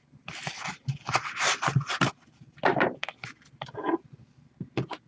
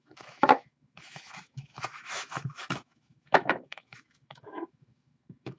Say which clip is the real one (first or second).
first